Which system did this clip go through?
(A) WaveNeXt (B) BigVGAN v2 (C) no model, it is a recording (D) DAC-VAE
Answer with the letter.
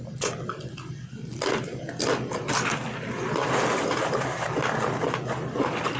C